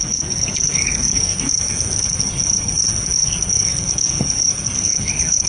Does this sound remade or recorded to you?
remade